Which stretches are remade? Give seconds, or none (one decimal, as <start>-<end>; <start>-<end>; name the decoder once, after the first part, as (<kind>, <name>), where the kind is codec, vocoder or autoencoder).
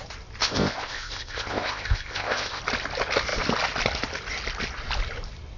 0.4-2.6 (codec, ZipCodec)